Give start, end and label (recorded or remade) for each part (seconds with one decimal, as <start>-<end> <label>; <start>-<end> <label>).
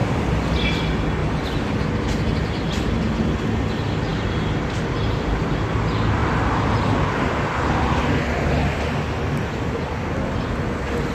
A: 0.0-0.7 remade; 0.7-4.1 recorded; 4.1-5.4 remade; 5.4-6.2 recorded; 6.2-6.7 remade; 6.7-11.1 recorded